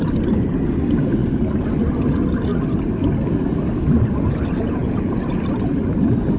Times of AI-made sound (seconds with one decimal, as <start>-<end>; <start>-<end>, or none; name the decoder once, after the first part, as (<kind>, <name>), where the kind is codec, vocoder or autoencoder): none